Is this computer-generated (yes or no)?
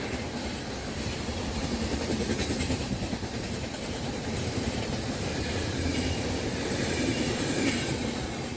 yes